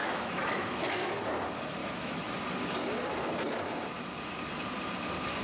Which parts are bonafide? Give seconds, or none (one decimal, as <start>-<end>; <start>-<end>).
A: 1.1-1.8; 2.3-5.4